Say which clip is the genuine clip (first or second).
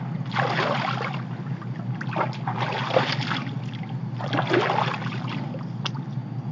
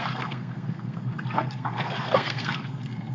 first